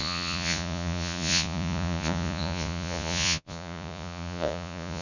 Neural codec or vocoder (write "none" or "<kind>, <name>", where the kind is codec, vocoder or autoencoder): vocoder, Vocos